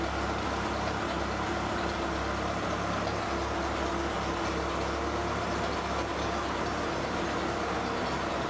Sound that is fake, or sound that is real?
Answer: real